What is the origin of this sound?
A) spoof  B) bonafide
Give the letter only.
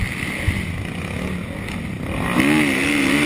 B